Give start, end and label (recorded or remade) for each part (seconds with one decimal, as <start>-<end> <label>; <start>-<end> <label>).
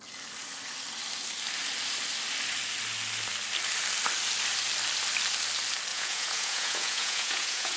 0.0-5.9 recorded; 5.9-7.8 remade